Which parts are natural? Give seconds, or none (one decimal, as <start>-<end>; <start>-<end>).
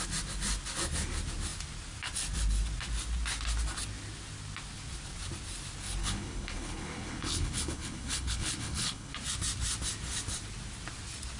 0.0-6.0; 9.1-11.4